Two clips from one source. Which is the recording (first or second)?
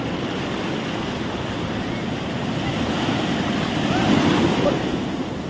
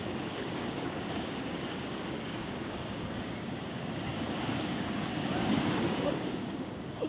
first